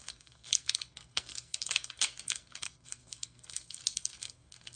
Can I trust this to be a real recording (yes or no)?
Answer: no